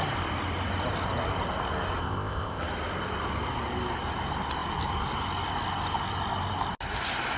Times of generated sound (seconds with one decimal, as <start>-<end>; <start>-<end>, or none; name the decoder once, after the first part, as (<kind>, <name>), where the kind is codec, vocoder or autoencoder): 2.0-2.6 (codec, ZipCodec)